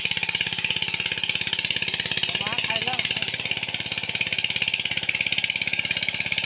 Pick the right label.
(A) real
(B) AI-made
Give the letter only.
A